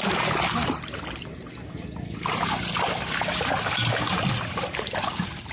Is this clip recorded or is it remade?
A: recorded